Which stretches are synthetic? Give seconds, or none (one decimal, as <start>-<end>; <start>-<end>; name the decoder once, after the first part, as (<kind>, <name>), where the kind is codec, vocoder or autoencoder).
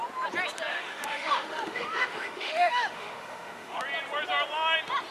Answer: 0.7-3.8 (autoencoder, DAC-VAE)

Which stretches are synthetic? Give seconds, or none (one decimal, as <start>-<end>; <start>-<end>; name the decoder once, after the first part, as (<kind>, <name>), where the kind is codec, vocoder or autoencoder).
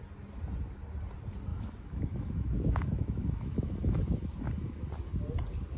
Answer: 1.5-4.9 (autoencoder, DAC-VAE)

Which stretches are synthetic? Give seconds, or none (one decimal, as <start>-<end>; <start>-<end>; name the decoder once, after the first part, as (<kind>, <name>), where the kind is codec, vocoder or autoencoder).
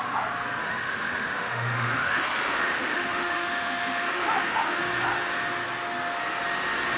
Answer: 0.6-4.8 (autoencoder, DAC-VAE)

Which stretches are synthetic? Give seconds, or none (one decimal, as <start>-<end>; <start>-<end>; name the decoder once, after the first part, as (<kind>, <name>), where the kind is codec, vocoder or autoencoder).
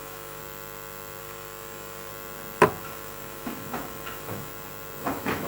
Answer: 0.0-0.4 (autoencoder, DAC-VAE); 1.2-2.1; 2.8-4.5; 5.0-5.5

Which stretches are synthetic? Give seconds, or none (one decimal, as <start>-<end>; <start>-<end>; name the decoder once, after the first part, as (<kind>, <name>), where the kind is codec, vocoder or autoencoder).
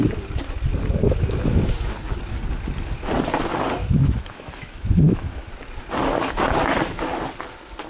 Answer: 1.0-1.9 (autoencoder, DAC-VAE); 3.8-5.5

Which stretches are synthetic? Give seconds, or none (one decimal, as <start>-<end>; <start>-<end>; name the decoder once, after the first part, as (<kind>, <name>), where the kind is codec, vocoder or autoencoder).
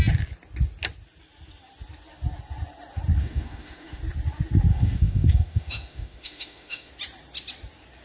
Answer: 3.2-4.0 (autoencoder, DAC-VAE); 4.7-6.9